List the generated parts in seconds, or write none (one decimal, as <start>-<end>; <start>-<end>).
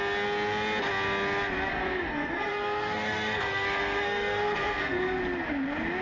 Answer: 1.7-5.2